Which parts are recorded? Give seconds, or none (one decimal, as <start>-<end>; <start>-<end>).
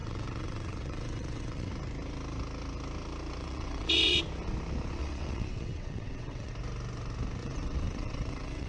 1.7-3.4; 4.2-5.0; 6.5-7.4